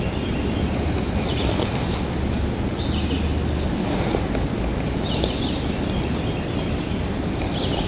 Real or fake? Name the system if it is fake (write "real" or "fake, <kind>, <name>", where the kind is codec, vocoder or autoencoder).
real